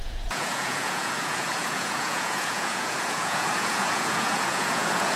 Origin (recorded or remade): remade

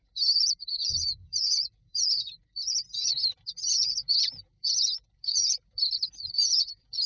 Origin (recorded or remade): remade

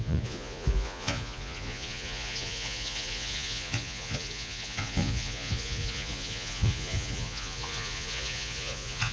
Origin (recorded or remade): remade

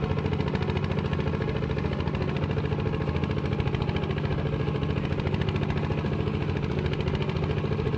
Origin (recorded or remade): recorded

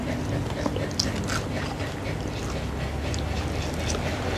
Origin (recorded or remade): recorded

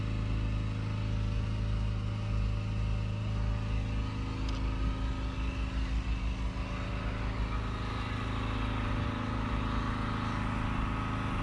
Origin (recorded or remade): recorded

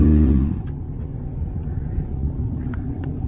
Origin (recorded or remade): remade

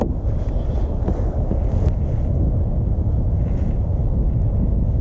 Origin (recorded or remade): recorded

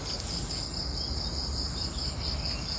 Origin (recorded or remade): recorded